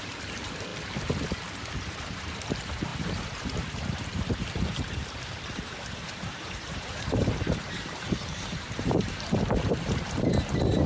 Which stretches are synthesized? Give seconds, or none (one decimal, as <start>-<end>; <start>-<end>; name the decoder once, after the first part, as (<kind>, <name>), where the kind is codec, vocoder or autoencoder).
0.0-0.7 (vocoder, BigVGAN v2); 1.6-10.9